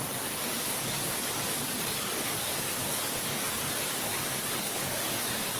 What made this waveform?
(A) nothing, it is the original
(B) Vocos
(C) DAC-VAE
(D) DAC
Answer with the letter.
D